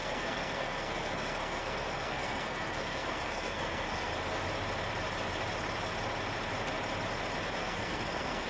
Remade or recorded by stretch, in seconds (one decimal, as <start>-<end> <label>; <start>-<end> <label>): 0.0-4.1 remade; 4.1-7.6 recorded; 7.6-8.5 remade